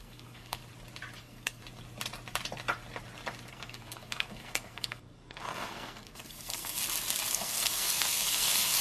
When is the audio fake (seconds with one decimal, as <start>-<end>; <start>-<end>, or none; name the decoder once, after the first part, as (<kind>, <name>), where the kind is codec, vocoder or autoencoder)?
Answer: 0.0-0.6 (codec, SNAC); 1.2-1.6; 3.5-6.8; 7.3-8.8